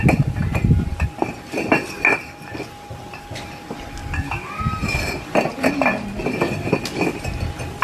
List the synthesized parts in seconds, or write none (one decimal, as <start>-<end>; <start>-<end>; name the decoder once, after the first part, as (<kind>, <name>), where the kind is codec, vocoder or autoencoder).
none